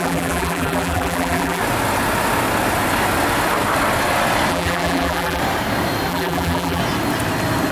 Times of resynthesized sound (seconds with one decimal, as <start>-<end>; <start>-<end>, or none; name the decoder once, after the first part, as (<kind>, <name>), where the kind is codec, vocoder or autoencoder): 0.0-1.6 (vocoder, BigVGAN v2); 4.5-5.4; 6.1-6.8

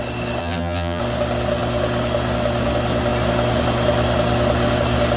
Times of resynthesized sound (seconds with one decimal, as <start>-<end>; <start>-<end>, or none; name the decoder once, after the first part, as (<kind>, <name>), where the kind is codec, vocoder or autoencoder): 0.4-1.0 (vocoder, BigVGAN v2)

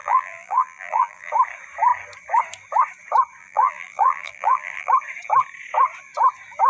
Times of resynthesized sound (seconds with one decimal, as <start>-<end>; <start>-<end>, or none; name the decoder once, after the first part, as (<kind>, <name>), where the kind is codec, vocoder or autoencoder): 0.0-1.3 (vocoder, BigVGAN v2); 3.4-4.9

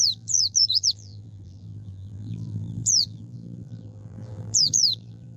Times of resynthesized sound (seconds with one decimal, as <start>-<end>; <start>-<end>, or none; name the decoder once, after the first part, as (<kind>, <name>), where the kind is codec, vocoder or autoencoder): 0.0-5.4 (vocoder, BigVGAN v2)

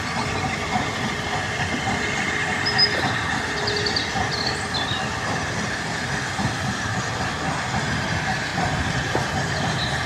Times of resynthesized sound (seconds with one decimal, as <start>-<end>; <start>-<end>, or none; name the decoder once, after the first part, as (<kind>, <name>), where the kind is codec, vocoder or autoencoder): 0.0-2.4 (vocoder, BigVGAN v2); 7.2-10.1

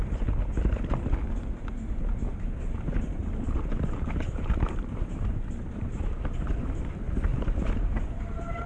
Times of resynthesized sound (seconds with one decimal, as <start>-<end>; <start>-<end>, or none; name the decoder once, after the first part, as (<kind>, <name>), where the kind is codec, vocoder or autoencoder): 3.2-6.8 (vocoder, BigVGAN v2); 7.3-8.7

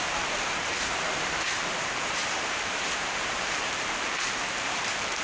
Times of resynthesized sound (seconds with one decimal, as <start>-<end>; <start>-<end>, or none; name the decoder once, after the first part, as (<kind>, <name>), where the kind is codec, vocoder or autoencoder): 0.0-5.2 (vocoder, BigVGAN v2)